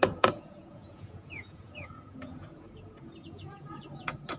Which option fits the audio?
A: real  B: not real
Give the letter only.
B